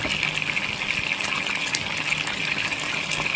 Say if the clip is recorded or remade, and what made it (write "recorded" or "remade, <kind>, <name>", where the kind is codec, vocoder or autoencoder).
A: recorded